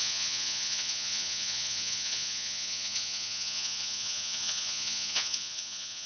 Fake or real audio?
fake